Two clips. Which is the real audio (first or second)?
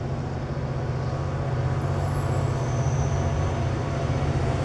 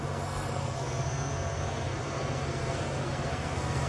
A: first